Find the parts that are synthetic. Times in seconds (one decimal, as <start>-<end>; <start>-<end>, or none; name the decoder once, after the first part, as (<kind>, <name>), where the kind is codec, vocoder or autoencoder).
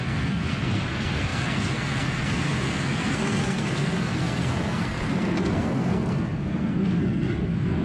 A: 0.0-7.8 (codec, SNAC)